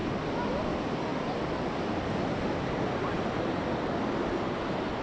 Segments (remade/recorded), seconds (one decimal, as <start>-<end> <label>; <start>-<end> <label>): 0.0-5.0 recorded

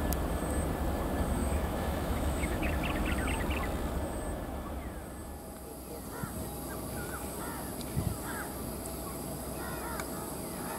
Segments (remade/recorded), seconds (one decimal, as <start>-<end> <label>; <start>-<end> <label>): 0.0-1.4 recorded; 1.4-2.7 remade; 2.7-10.8 recorded

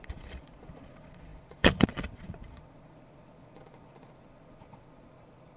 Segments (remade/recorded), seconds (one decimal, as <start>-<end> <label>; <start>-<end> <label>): 0.0-5.6 remade